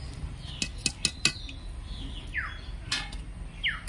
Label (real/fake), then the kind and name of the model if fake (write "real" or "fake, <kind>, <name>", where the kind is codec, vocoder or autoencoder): real